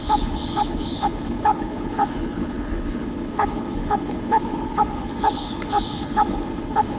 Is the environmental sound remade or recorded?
remade